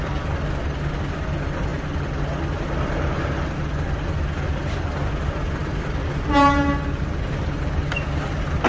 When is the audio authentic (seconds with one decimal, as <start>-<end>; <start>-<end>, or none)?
0.0-8.7